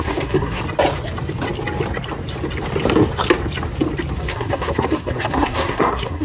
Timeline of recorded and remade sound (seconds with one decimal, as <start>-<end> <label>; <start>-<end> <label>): 0.0-0.6 remade; 0.6-4.1 recorded; 4.1-6.2 remade